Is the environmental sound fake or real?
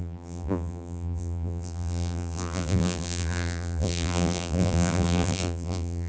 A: fake